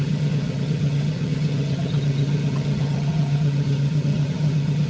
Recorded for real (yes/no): no